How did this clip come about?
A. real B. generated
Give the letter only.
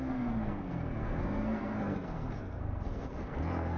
B